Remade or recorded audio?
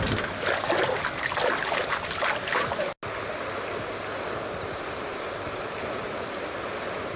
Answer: recorded